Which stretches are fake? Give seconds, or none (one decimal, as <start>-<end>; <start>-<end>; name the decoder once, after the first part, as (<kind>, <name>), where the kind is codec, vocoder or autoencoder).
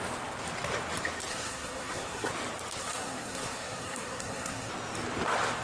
1.3-2.3 (codec, SNAC); 2.8-4.7